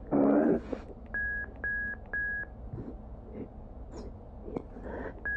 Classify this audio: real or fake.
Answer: real